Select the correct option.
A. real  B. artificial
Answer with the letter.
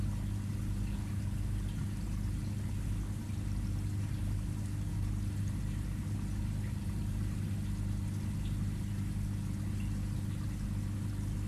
A